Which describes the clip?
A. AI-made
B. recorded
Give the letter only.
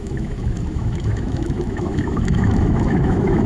A